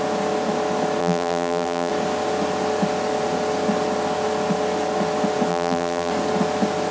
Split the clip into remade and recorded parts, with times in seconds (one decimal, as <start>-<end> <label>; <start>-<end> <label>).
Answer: 0.0-1.0 recorded; 1.0-1.9 remade; 1.9-5.5 recorded; 5.5-6.1 remade; 6.1-6.9 recorded